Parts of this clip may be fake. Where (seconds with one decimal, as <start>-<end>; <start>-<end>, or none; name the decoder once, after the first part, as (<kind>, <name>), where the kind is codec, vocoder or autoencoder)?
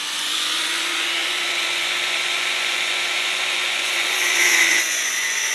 0.0-5.5 (vocoder, Vocos)